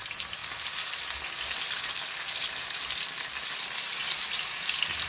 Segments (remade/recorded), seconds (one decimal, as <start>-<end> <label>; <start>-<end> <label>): 0.0-0.4 remade; 0.4-3.5 recorded; 3.5-5.1 remade